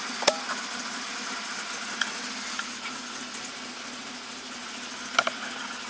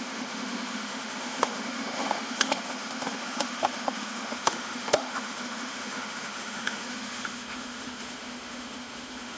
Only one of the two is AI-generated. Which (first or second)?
second